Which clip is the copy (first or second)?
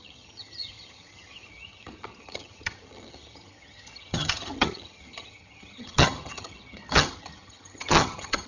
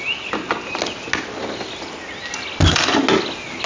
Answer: first